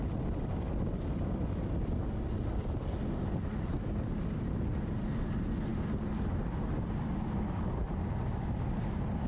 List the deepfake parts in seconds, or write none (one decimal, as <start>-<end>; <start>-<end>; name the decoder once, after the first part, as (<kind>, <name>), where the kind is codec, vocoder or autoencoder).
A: none